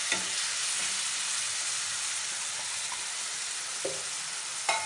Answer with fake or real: real